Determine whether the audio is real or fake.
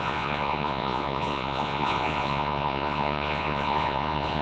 fake